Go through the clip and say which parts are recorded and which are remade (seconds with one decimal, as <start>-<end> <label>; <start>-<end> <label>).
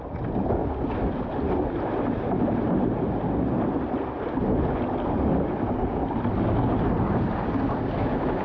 0.0-8.4 recorded